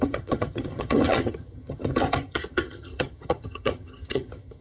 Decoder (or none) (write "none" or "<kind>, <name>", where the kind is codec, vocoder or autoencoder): vocoder, HiFi-GAN